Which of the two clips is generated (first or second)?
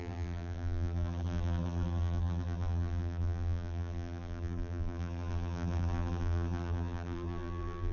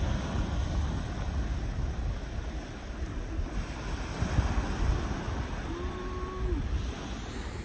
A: first